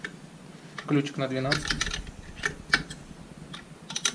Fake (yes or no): no